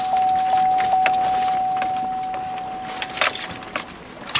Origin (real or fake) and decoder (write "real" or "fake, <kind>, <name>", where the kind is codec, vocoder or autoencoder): real